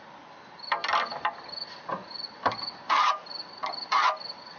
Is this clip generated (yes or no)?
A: no